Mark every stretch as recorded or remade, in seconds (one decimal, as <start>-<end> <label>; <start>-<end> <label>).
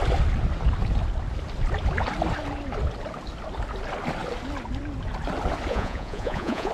0.0-5.7 recorded; 5.7-6.7 remade